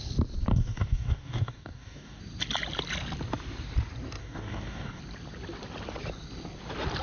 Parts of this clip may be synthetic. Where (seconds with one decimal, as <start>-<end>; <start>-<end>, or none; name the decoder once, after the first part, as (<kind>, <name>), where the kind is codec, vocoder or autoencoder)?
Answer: 0.5-2.2 (codec, DAC); 4.2-5.0